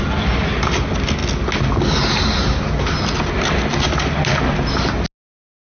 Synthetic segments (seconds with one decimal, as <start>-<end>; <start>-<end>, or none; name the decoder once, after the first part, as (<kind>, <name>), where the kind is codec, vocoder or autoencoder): none